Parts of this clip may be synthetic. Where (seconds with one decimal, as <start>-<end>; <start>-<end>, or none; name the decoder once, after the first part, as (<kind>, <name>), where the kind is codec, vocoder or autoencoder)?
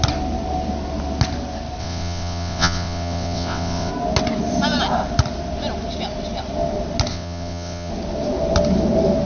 1.8-3.9 (vocoder, WaveNeXt); 7.1-7.9